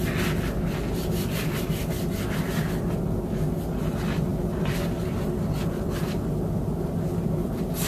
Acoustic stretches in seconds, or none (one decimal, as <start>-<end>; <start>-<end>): 0.0-7.9